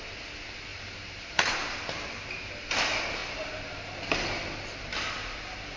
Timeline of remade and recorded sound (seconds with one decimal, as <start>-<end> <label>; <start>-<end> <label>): 0.0-0.7 recorded; 0.7-2.1 remade; 2.1-5.8 recorded